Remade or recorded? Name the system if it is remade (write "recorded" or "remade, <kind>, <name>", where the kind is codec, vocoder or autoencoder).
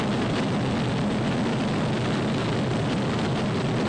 recorded